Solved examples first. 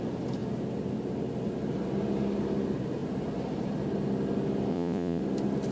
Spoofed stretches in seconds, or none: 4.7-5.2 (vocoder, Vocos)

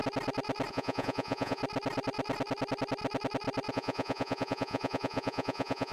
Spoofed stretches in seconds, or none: 0.7-1.6 (vocoder, Vocos); 3.7-5.9

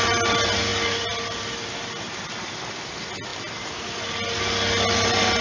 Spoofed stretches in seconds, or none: none

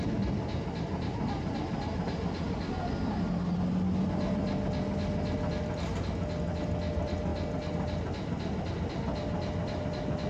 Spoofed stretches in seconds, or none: none

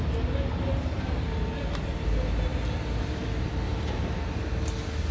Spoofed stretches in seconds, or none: none